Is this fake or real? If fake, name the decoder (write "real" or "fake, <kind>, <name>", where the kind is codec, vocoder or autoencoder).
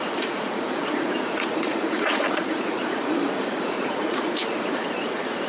fake, vocoder, Vocos